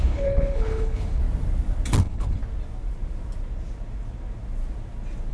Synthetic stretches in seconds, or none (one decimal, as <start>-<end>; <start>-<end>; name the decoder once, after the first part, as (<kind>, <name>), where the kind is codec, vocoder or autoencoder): 0.0-1.2 (codec, HILCodec); 2.0-2.4